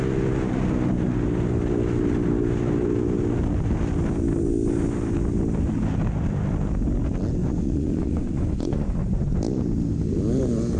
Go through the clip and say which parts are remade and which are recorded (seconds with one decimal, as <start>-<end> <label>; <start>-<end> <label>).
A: 0.0-7.4 recorded; 7.4-9.3 remade; 9.3-10.8 recorded